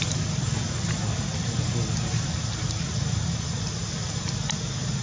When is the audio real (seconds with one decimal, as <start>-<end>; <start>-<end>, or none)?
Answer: 0.0-5.0